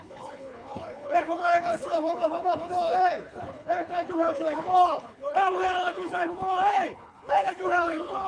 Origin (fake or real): fake